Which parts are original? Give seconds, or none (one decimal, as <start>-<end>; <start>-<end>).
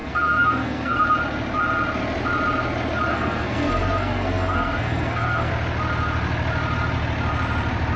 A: 1.0-3.1; 5.5-8.0